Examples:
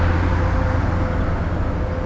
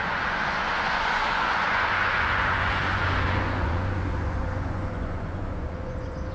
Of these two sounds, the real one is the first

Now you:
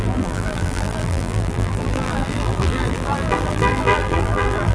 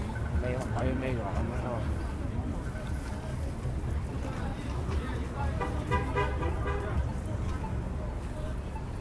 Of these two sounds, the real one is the second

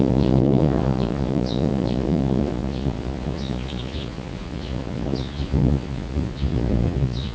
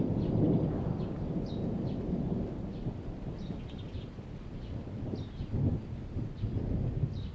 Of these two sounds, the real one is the second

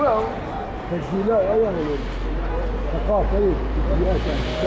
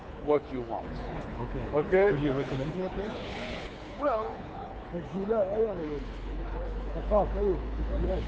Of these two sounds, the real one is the first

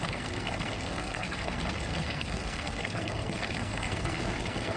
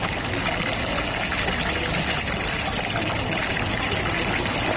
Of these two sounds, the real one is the second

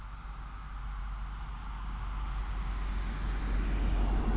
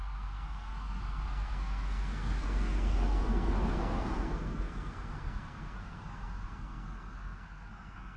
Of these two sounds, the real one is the first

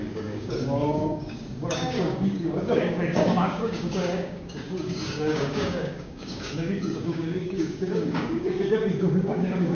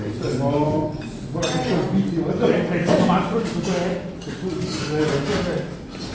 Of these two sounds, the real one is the second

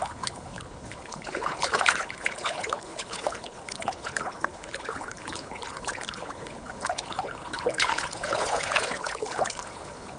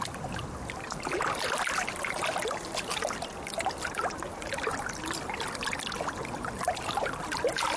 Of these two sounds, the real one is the second